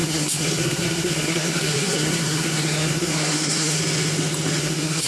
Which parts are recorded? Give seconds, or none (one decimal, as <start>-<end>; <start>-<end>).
3.8-4.6